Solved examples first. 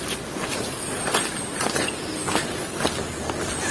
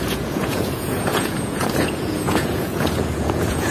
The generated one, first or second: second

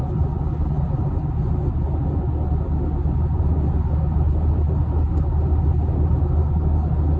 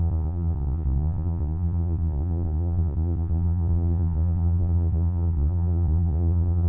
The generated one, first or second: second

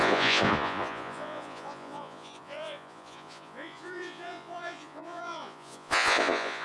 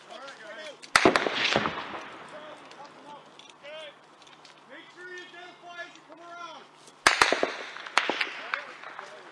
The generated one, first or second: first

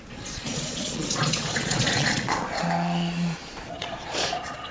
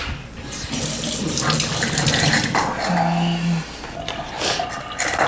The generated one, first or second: first